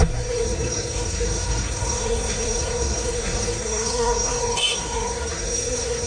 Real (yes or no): no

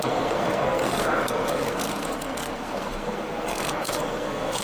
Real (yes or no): no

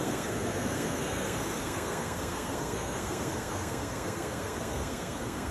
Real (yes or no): no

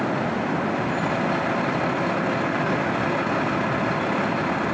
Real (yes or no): yes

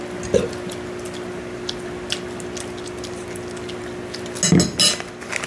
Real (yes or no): yes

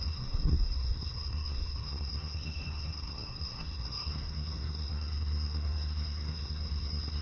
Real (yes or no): no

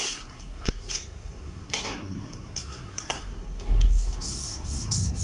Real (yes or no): no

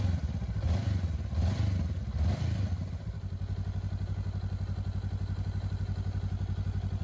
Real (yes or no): yes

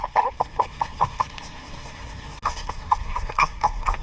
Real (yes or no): no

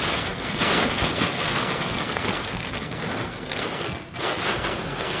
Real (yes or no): no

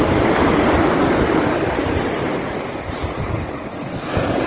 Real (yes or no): yes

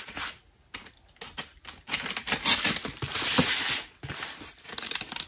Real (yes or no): yes